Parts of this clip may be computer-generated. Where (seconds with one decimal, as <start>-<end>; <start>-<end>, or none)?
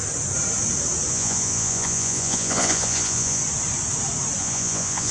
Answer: 1.1-3.4; 4.4-5.1